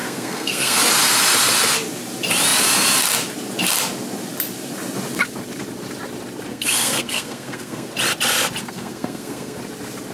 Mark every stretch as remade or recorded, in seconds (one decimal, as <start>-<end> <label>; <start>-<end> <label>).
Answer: 0.0-0.8 remade; 0.8-6.5 recorded; 6.5-7.9 remade; 7.9-8.6 recorded; 8.6-9.6 remade; 9.6-10.1 recorded